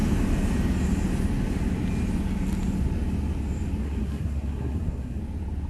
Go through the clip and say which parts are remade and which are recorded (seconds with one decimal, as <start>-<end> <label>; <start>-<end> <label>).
0.0-3.8 recorded; 3.8-5.2 remade; 5.2-5.7 recorded